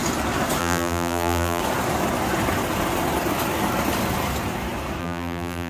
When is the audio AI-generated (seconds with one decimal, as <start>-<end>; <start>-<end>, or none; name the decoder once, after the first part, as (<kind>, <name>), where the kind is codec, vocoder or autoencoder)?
0.6-1.6 (vocoder, BigVGAN v2); 5.0-5.7